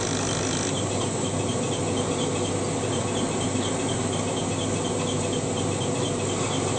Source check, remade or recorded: recorded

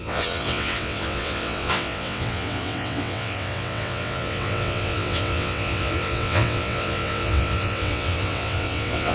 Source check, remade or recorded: remade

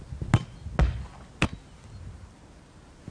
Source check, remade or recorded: recorded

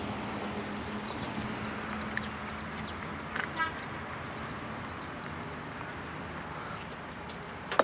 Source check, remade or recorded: recorded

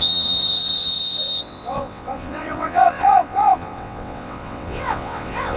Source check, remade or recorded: remade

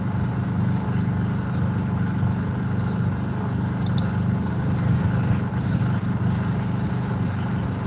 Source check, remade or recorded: recorded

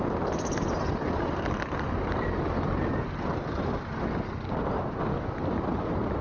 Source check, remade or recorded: recorded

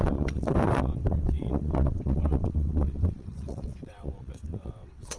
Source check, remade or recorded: remade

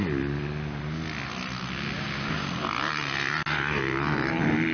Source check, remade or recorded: recorded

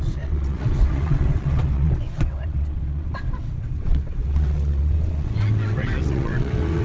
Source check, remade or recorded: remade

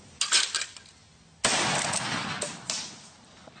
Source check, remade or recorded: recorded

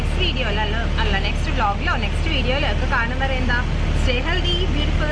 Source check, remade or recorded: recorded